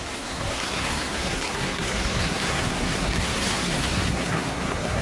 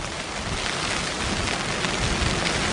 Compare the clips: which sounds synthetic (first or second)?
first